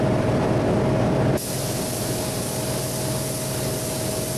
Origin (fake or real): real